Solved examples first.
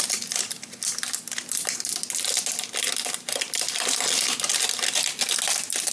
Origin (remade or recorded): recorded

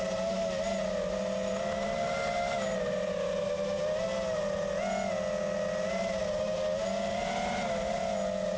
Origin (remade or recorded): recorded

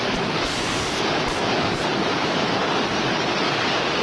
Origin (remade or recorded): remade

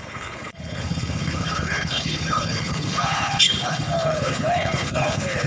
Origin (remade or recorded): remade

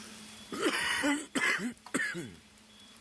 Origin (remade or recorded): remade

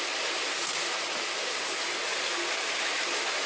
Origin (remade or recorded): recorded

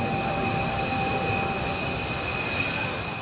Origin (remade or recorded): recorded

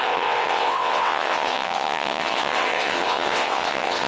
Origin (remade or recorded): remade